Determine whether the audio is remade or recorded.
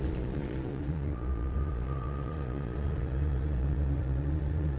remade